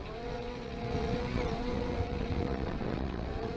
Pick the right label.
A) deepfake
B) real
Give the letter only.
A